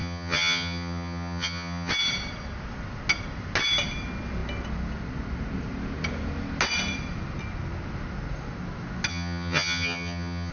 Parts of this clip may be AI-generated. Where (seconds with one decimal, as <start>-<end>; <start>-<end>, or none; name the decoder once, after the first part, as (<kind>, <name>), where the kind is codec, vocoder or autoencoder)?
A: 0.0-1.9 (vocoder, HiFi-GAN); 9.1-10.5